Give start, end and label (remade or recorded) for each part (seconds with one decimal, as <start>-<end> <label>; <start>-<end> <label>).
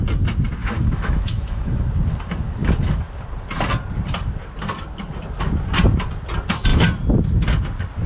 0.0-0.6 recorded; 0.6-1.8 remade; 1.8-8.1 recorded